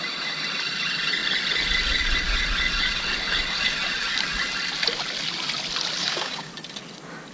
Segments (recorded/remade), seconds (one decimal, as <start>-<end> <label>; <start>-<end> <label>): 0.0-6.0 recorded; 6.0-6.5 remade; 6.5-7.3 recorded